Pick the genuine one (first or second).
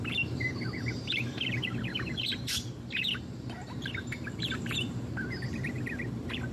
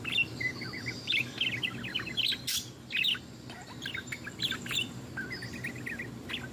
second